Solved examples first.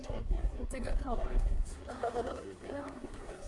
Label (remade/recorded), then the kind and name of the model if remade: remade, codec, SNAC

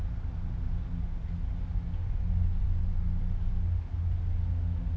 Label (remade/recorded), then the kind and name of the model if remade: recorded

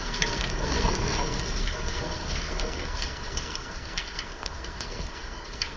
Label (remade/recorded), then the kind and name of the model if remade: remade, codec, SNAC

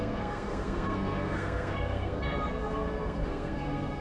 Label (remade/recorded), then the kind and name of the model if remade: remade, codec, SNAC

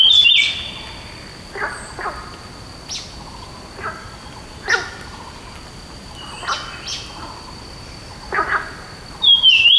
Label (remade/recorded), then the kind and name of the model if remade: recorded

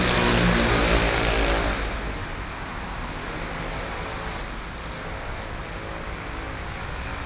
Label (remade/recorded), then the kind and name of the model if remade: recorded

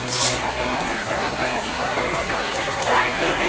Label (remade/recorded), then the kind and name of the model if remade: remade, codec, SNAC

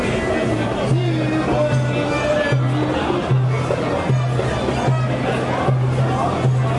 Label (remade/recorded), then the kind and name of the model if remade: recorded